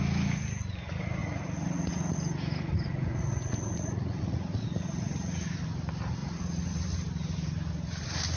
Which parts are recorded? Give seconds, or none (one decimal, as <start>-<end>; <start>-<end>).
0.0-1.2; 5.6-6.2; 6.8-8.4